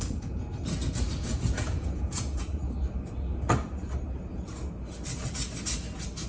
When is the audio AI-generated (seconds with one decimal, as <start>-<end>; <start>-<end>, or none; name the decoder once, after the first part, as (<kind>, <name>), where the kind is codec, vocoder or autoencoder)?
0.0-0.5 (vocoder, Vocos); 1.2-2.6